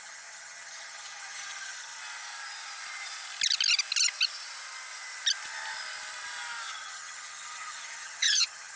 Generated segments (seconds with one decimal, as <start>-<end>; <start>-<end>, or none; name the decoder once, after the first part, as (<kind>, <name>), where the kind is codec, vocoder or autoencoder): 0.0-2.0 (vocoder, HiFi-GAN); 6.7-8.8